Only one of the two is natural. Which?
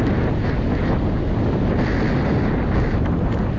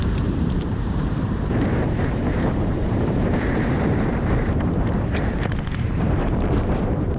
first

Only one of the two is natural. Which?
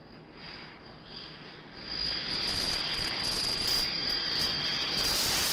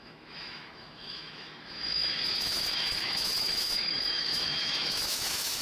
first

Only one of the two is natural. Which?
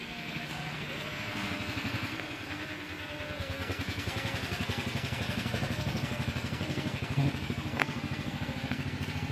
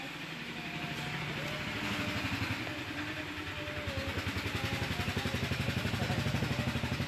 second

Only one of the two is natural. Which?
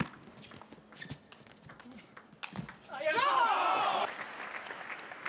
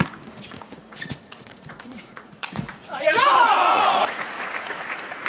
first